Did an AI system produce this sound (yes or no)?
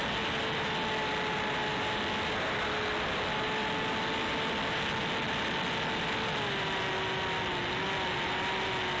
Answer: no